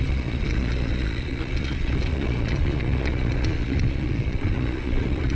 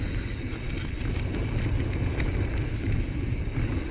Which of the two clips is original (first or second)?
second